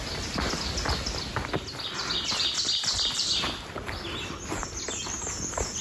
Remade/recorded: recorded